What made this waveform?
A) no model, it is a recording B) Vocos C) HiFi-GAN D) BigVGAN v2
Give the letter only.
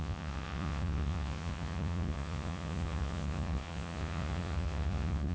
B